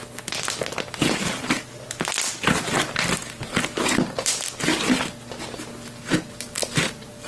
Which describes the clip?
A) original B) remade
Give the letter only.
A